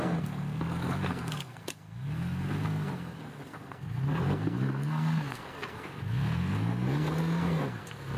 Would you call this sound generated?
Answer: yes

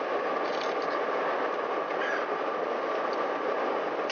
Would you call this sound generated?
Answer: no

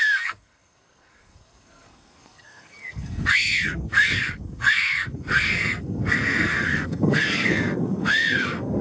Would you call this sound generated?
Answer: yes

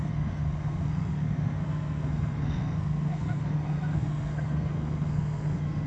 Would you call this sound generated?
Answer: yes